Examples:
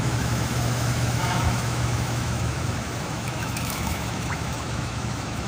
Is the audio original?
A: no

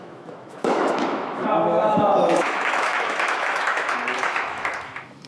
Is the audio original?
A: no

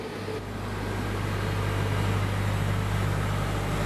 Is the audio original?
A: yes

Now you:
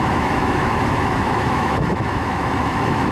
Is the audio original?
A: no